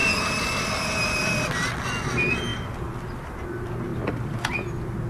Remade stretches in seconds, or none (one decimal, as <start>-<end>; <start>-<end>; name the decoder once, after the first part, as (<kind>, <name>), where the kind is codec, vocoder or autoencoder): 2.5-3.4 (vocoder, BigVGAN v2); 3.9-4.5